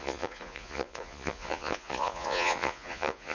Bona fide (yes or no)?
no